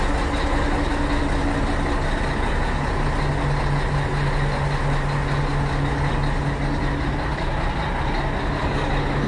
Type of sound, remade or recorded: recorded